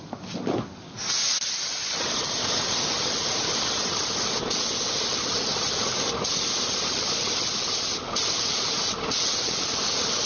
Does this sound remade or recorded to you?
recorded